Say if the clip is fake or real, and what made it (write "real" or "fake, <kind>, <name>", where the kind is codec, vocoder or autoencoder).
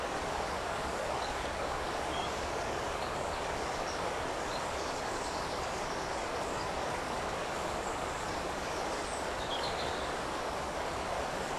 fake, codec, DAC